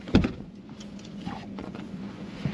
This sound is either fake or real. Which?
fake